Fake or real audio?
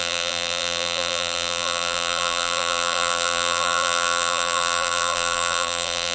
fake